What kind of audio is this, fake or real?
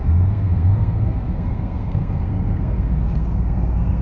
fake